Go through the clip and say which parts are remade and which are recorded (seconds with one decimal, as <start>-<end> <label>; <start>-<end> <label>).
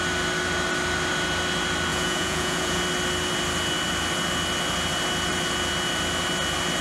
0.0-1.9 recorded; 1.9-2.8 remade; 2.8-6.8 recorded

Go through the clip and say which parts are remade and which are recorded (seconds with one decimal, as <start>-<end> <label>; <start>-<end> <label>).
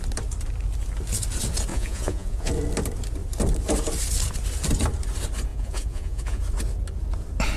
0.0-1.7 recorded; 1.7-2.5 remade; 2.5-5.5 recorded; 5.5-6.4 remade; 6.4-7.6 recorded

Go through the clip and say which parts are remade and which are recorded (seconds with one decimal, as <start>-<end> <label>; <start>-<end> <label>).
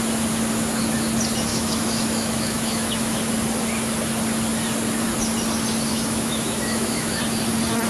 0.0-1.5 recorded; 1.5-3.2 remade; 3.2-5.9 recorded; 5.9-7.2 remade; 7.2-7.9 recorded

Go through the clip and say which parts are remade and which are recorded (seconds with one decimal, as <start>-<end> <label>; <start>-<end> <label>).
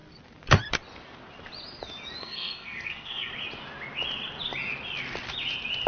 0.0-2.2 recorded; 2.2-3.3 remade; 3.3-5.9 recorded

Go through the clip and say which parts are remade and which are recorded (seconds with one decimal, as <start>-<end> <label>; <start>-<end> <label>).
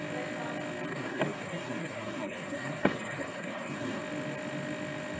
0.0-0.9 recorded; 0.9-4.0 remade; 4.0-5.2 recorded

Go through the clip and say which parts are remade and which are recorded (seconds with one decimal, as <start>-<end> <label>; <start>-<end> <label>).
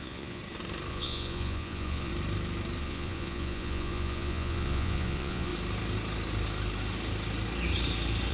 0.0-0.4 remade; 0.4-0.9 recorded; 0.9-2.1 remade; 2.1-2.8 recorded; 2.8-5.5 remade; 5.5-8.3 recorded